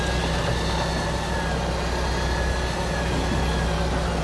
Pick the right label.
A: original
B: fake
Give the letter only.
A